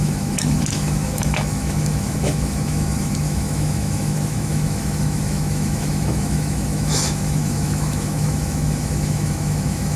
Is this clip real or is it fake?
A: fake